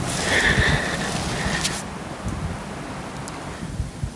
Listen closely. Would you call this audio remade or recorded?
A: recorded